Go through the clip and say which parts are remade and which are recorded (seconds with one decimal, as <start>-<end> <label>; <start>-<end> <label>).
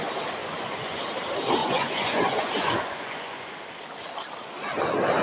0.0-0.4 recorded; 0.4-1.0 remade; 1.0-1.6 recorded; 1.6-3.5 remade; 3.5-5.2 recorded